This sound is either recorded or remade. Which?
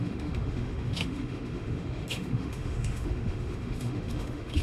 remade